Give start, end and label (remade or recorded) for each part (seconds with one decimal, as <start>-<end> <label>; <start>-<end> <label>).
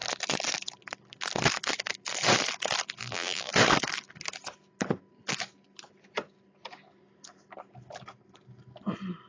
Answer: 0.0-3.0 recorded; 3.0-3.5 remade; 3.5-9.3 recorded